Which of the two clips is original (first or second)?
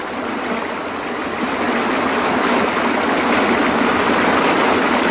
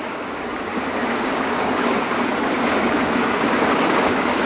first